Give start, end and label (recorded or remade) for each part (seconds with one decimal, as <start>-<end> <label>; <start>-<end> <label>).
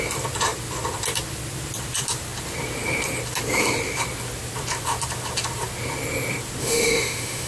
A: 0.0-6.6 recorded; 6.6-7.5 remade